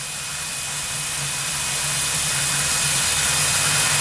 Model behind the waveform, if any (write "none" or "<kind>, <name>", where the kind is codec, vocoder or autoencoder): vocoder, BigVGAN v2